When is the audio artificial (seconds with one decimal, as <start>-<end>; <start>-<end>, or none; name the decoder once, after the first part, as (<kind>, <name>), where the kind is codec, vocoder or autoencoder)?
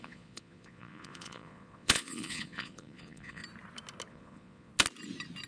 0.0-3.4 (vocoder, Vocos); 4.1-4.7